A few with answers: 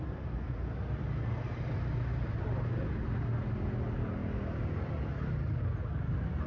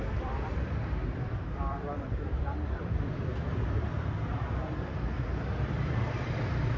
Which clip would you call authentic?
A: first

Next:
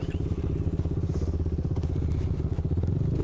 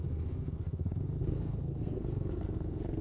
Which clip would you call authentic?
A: first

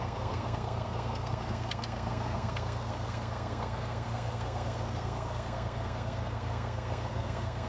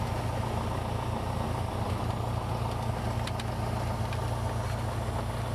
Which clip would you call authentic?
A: second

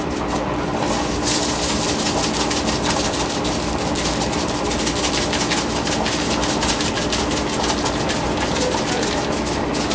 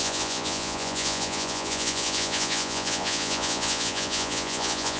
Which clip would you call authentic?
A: first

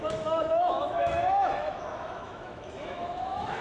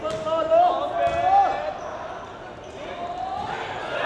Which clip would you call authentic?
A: second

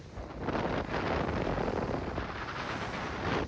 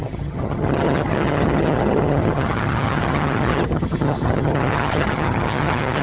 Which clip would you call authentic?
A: first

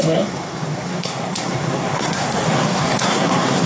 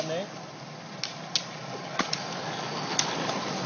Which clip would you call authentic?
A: second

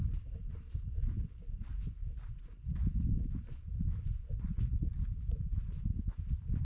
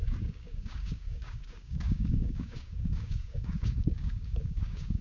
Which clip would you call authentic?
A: first